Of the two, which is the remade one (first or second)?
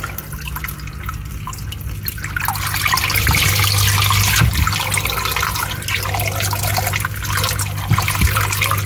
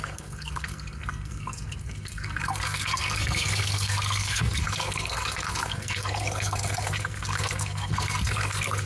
second